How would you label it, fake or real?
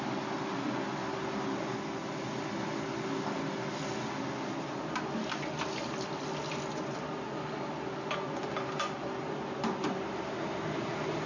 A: real